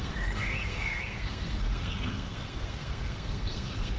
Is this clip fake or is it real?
fake